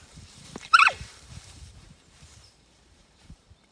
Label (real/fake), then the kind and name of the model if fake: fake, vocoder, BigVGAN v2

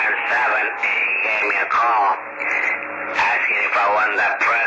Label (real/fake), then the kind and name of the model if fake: real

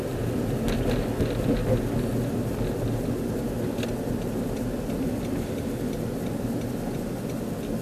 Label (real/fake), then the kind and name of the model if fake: real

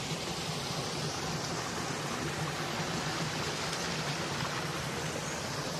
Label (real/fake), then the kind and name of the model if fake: real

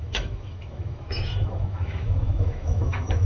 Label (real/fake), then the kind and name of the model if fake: fake, autoencoder, DAC-VAE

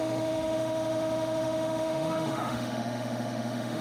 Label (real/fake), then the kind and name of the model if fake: fake, autoencoder, DAC-VAE